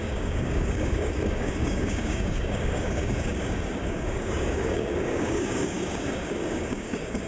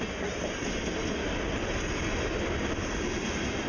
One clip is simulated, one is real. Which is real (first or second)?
second